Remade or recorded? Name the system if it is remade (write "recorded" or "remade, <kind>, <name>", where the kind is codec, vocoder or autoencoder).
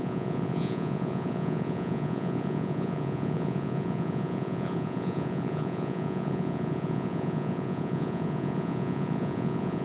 remade, vocoder, Vocos